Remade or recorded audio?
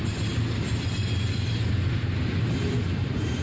recorded